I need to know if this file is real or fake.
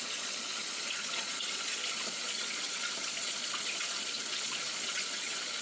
fake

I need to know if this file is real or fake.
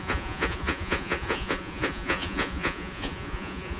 fake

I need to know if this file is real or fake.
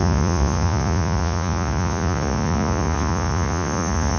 fake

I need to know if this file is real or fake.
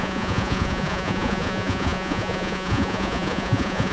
fake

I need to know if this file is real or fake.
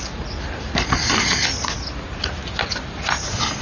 real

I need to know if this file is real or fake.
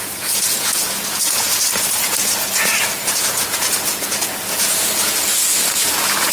fake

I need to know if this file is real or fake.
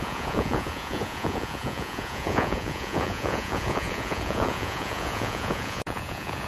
fake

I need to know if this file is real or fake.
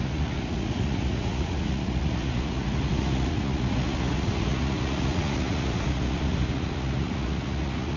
fake